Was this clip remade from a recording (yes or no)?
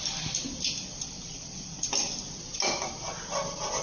no